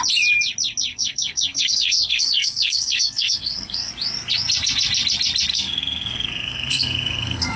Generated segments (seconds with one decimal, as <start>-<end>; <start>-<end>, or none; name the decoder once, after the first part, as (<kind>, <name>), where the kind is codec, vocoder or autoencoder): 0.9-3.9 (codec, SNAC); 5.5-7.6

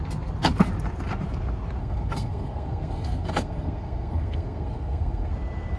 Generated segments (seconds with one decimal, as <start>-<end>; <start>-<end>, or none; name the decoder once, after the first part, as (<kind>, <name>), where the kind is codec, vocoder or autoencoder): 1.8-5.3 (codec, SNAC)

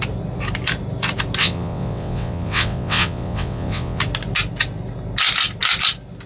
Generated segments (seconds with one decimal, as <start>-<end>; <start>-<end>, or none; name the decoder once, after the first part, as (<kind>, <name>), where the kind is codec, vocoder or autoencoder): 1.4-4.0 (vocoder, WaveNeXt)

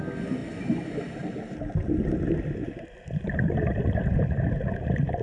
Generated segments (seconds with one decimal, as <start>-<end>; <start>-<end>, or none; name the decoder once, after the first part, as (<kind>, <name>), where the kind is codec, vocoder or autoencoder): 0.4-0.9 (vocoder, BigVGAN v2)